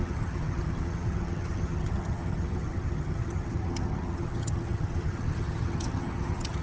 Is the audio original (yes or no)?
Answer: no